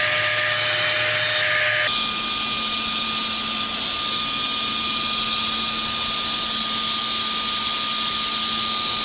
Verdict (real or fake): real